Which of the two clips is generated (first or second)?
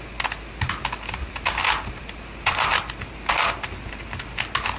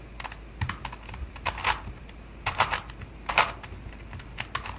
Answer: second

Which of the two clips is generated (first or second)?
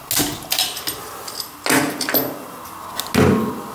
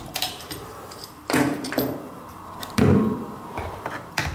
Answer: second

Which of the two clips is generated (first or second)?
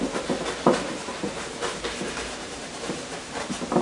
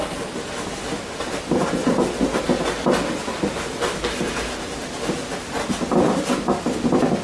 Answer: first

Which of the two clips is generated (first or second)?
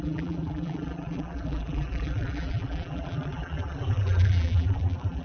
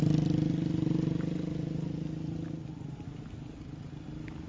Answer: first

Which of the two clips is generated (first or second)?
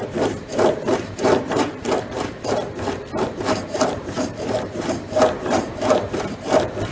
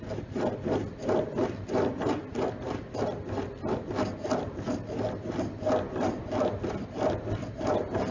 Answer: first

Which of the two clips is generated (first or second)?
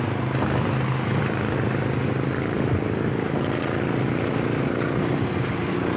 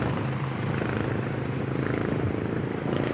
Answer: second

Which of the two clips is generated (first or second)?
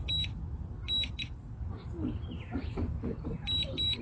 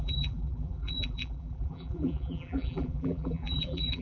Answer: second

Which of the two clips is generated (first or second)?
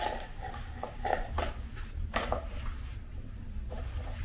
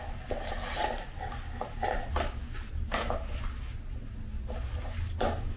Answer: first